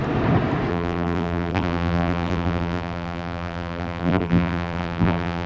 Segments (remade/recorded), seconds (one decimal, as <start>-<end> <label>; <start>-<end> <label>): 0.0-0.7 recorded; 0.7-5.5 remade